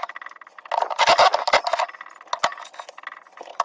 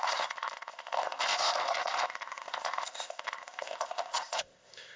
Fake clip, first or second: second